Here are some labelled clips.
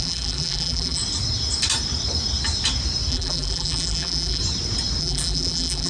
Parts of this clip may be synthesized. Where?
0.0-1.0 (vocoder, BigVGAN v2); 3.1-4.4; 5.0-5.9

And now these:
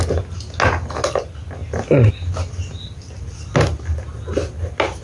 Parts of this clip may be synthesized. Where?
none